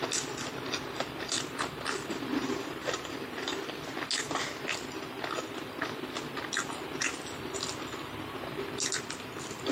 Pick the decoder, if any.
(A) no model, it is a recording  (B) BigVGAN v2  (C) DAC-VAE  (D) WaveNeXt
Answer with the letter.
A